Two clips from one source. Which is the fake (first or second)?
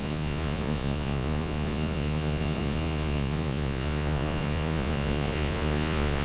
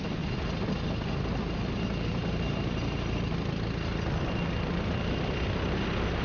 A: first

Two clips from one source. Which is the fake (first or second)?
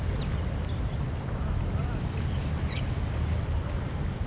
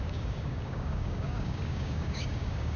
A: second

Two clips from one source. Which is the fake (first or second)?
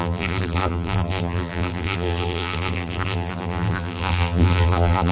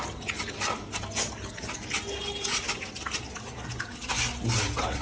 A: first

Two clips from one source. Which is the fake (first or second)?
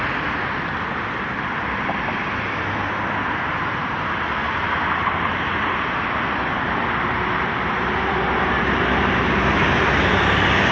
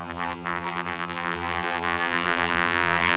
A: second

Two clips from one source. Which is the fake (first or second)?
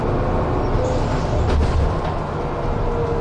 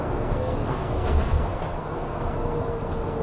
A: second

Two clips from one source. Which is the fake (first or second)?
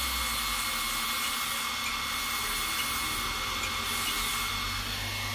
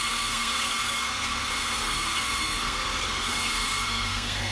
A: second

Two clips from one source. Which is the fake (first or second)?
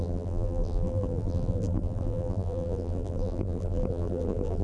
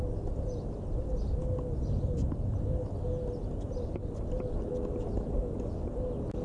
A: first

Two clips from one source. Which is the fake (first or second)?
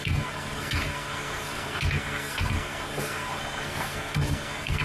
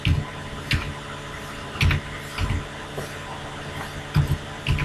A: first